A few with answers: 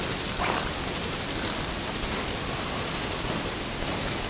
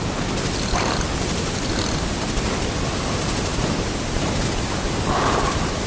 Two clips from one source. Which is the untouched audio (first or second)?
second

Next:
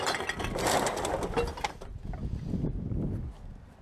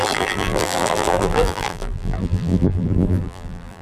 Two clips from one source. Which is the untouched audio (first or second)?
first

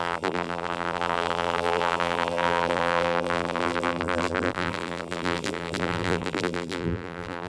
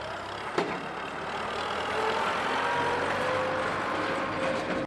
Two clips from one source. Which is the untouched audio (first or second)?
second